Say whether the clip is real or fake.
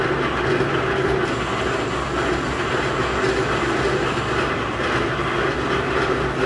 real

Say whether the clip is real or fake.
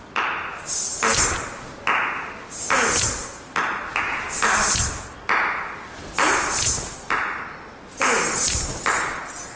real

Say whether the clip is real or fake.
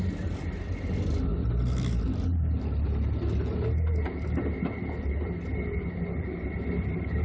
real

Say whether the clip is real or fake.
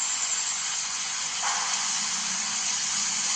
fake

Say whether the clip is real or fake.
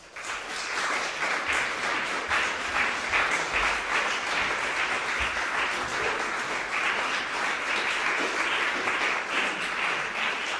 real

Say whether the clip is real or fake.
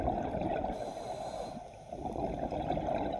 real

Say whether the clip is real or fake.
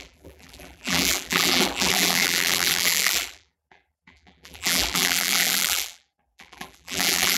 fake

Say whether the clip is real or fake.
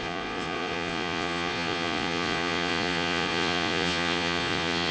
fake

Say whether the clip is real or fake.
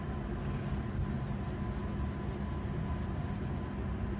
real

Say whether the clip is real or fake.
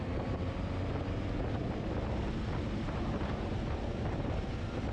real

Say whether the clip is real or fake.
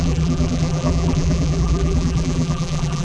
fake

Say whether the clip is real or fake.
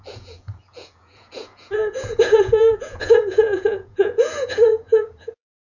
fake